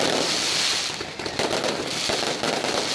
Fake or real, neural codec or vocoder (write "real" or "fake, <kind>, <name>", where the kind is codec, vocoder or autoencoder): real